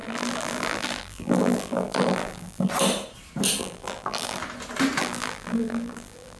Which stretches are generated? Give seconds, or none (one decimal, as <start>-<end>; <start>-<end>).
0.0-2.7; 3.6-4.4; 5.0-6.4